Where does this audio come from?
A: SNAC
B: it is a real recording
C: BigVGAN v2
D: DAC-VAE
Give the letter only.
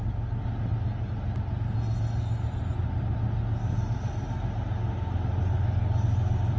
B